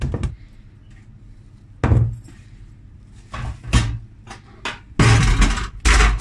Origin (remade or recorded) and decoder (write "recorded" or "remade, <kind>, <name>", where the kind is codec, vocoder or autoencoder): recorded